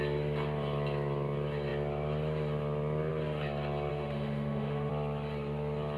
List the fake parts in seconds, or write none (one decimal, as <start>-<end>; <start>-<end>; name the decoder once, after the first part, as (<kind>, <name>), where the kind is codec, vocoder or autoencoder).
3.9-4.9 (autoencoder, DAC-VAE)